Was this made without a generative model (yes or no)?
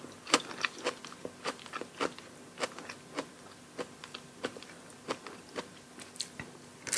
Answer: yes